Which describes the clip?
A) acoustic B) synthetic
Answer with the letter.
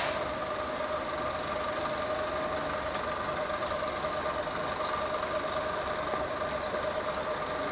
A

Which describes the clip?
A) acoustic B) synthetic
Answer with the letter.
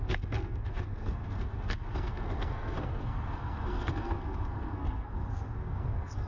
B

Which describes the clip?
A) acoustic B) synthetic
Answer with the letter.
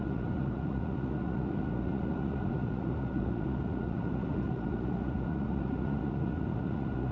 B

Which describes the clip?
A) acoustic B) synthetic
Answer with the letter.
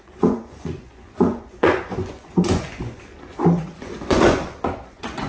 B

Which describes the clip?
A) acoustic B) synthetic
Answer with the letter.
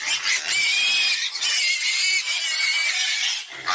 A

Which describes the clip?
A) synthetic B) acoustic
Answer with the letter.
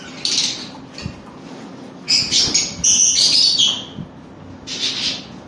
B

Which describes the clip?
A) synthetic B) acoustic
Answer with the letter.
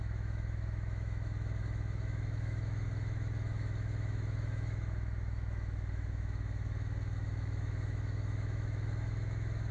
A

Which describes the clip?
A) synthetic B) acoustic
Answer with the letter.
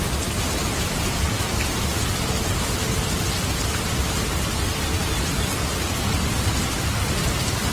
B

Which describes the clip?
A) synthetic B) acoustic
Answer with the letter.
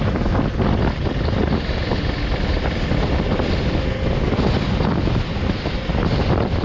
B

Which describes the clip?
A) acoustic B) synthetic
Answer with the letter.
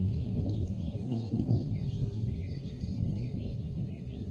B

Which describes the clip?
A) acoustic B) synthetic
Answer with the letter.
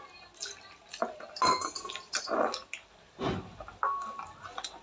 A